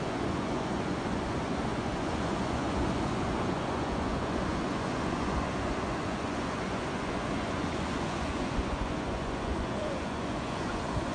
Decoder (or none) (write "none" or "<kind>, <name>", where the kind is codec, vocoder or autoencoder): vocoder, Vocos